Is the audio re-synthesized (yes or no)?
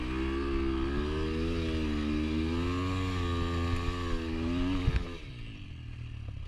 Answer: no